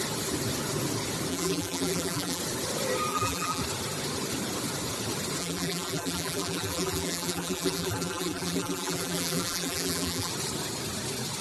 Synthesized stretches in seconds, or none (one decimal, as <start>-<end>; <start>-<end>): 1.3-2.4; 3.1-3.6; 5.4-10.3